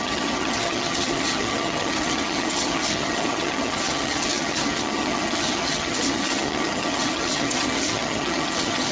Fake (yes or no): yes